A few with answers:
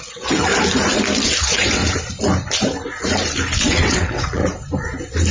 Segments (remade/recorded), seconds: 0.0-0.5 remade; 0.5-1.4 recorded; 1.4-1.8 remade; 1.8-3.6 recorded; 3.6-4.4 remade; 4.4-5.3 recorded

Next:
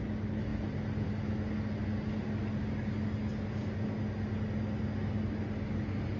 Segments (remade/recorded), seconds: 0.0-6.2 recorded

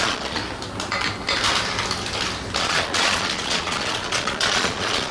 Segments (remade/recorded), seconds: 0.0-0.4 remade; 0.4-2.6 recorded; 2.6-5.1 remade